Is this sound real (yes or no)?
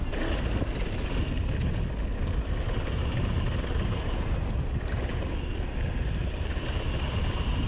yes